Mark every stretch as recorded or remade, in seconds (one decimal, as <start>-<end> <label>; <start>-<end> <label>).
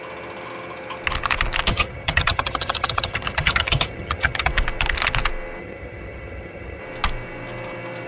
0.0-1.7 recorded; 1.7-4.5 remade; 4.5-5.6 recorded; 5.6-6.8 remade; 6.8-8.1 recorded